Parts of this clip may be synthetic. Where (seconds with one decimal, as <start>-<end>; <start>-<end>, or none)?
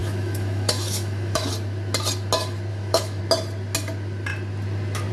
0.0-1.5; 2.7-3.2